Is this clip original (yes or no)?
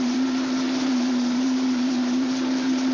no